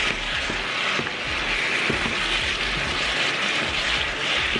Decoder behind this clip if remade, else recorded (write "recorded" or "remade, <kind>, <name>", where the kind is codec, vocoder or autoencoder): recorded